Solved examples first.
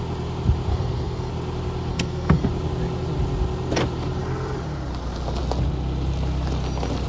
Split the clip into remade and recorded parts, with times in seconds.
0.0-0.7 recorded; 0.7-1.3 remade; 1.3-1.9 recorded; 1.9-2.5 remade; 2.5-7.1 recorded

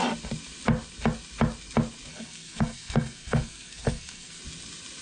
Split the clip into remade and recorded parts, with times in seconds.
0.0-2.1 recorded; 2.1-4.4 remade; 4.4-5.0 recorded

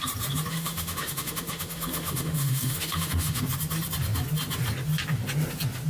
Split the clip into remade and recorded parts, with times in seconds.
0.0-0.5 recorded; 0.5-3.4 remade; 3.4-5.9 recorded

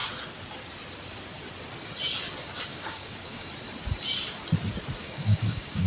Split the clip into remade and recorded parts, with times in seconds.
0.0-2.7 recorded; 2.7-3.5 remade; 3.5-5.0 recorded; 5.0-5.9 remade

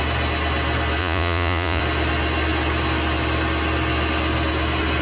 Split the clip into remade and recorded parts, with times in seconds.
0.0-1.0 recorded; 1.0-1.8 remade; 1.8-5.0 recorded

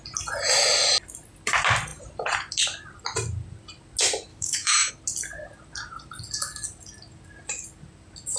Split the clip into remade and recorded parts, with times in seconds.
0.0-4.3 recorded; 4.3-4.9 remade; 4.9-8.4 recorded

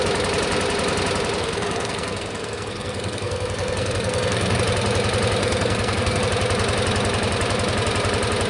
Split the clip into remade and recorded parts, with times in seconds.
0.0-1.4 recorded; 1.4-4.6 remade; 4.6-5.4 recorded; 5.4-6.2 remade; 6.2-8.5 recorded